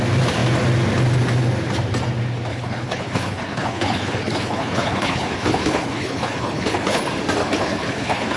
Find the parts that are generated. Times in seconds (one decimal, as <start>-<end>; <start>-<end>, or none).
2.5-7.0; 7.4-8.4